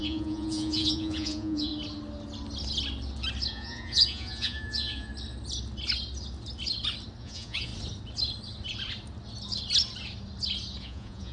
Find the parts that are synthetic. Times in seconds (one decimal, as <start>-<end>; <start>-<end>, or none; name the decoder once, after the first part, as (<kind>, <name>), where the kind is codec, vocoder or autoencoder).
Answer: 0.0-1.7 (vocoder, Vocos); 3.5-5.1; 7.2-7.7; 10.8-11.3